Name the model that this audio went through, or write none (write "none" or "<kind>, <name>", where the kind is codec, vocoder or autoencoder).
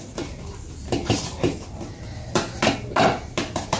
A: none